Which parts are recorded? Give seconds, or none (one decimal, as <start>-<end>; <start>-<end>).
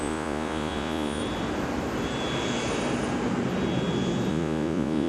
1.2-4.3